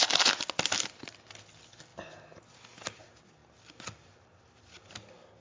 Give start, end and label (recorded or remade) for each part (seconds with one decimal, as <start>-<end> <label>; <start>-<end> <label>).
0.0-5.4 recorded